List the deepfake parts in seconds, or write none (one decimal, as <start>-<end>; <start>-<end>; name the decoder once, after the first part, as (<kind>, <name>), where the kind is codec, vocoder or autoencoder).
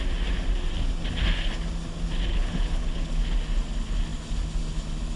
2.3-3.1 (codec, HILCodec)